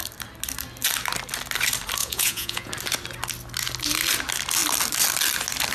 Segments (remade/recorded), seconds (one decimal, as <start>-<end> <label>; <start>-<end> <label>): 0.0-2.0 recorded; 2.0-2.7 remade; 2.7-5.7 recorded